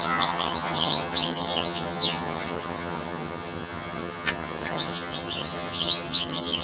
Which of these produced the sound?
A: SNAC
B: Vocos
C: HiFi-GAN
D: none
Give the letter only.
C